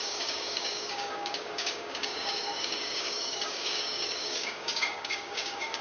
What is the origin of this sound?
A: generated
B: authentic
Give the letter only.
A